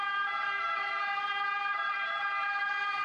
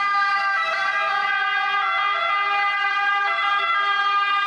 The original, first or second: second